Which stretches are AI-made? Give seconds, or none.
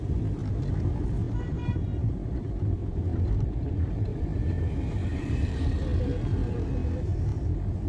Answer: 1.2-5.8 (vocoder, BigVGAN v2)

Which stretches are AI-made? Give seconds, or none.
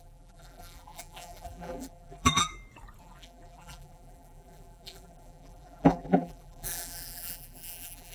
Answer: 0.0-2.5 (vocoder, BigVGAN v2); 3.0-8.1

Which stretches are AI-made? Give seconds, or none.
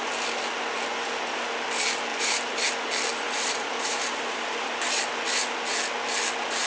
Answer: 2.1-2.7 (vocoder, BigVGAN v2); 3.1-5.0